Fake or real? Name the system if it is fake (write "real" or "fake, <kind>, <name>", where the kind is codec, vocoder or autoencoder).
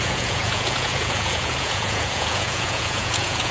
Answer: fake, vocoder, Vocos